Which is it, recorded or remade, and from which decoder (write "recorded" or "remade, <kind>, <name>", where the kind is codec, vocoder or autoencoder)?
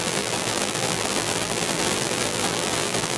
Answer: remade, vocoder, BigVGAN v2